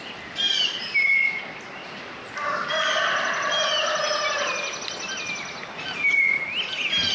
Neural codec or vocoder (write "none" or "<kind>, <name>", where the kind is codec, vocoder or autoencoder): none